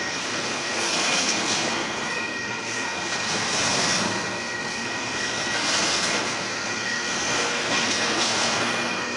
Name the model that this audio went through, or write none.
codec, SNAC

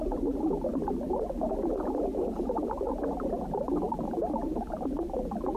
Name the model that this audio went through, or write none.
vocoder, BigVGAN v2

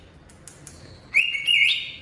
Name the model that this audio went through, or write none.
none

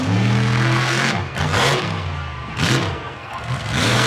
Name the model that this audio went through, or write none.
codec, SNAC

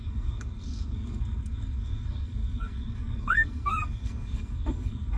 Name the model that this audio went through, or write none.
codec, SNAC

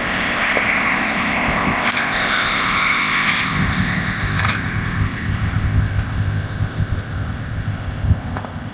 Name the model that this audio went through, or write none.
codec, ZipCodec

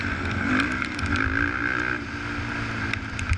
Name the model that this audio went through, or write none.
none